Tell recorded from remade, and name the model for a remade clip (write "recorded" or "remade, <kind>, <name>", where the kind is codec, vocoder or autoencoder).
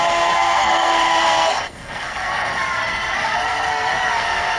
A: remade, codec, SNAC